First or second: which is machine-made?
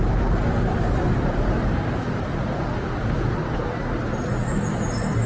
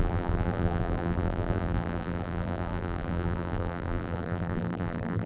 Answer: second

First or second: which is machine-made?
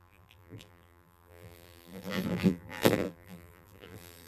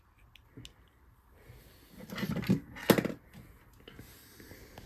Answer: first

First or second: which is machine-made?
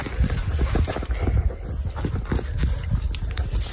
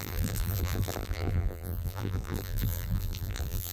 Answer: second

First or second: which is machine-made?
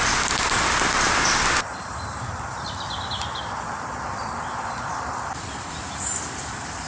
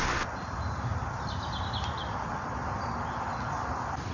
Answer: first